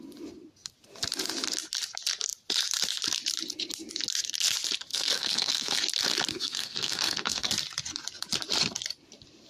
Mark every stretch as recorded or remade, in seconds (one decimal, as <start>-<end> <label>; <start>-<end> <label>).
0.0-4.9 recorded; 4.9-5.8 remade; 5.8-6.3 recorded; 6.3-7.5 remade; 7.5-9.5 recorded